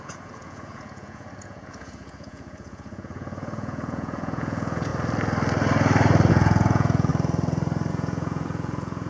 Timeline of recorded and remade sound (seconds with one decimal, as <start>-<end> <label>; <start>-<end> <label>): 0.0-4.9 remade; 4.9-6.3 recorded; 6.3-7.1 remade; 7.1-7.9 recorded; 7.9-9.1 remade